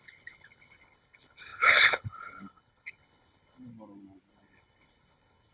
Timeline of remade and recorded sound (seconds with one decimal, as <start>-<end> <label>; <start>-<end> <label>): 0.0-3.7 remade; 3.7-4.3 recorded; 4.3-5.5 remade